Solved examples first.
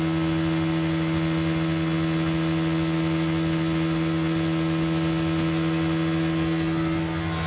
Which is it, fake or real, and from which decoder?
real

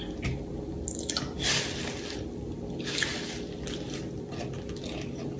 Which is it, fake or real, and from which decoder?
real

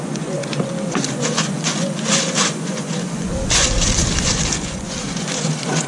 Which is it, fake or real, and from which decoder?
fake, vocoder, Vocos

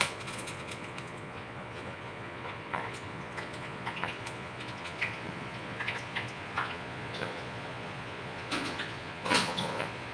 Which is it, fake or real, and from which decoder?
fake, vocoder, Vocos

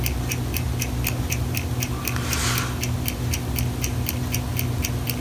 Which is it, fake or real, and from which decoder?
real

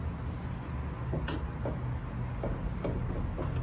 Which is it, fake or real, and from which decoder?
real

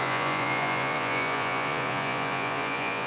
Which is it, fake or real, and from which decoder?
fake, vocoder, Vocos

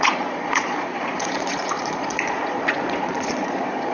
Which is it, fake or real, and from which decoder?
fake, vocoder, Vocos